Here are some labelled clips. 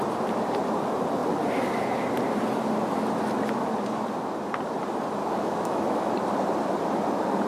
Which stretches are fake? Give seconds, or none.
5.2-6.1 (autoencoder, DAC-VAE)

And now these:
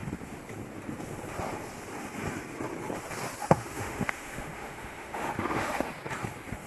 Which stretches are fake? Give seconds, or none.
3.4-5.9 (autoencoder, DAC-VAE)

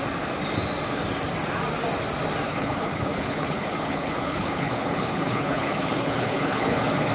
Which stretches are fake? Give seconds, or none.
2.5-7.1 (codec, HILCodec)

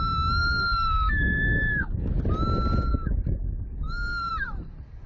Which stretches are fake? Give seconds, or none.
0.4-2.1 (codec, DAC); 2.9-4.3

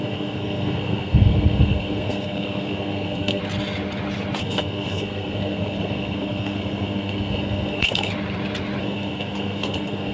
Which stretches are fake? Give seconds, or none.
0.0-3.4 (codec, SNAC); 4.4-8.1; 8.8-10.1

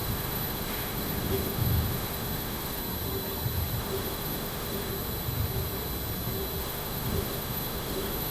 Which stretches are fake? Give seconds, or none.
0.0-2.8 (autoencoder, DAC-VAE); 3.8-4.9; 6.6-8.3

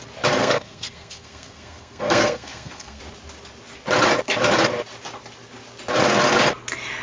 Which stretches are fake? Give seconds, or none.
0.4-3.0 (codec, SNAC)